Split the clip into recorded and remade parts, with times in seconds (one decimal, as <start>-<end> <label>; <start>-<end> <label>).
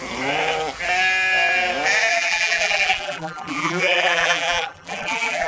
0.0-2.1 recorded; 2.1-5.5 remade